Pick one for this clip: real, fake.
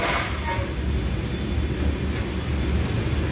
real